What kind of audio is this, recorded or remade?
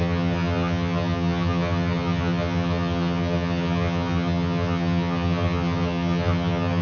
remade